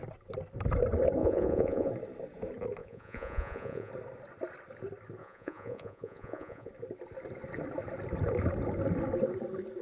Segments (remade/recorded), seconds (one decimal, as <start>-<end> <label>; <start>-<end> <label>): 0.0-1.2 recorded; 1.2-1.9 remade; 1.9-2.8 recorded; 2.8-3.9 remade; 3.9-5.2 recorded; 5.2-6.7 remade; 6.7-9.8 recorded